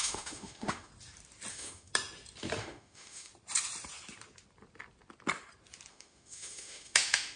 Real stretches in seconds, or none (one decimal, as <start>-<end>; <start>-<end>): 0.9-1.5; 1.9-2.6; 3.3-5.9